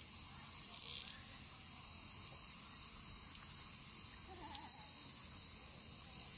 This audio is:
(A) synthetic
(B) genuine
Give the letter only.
B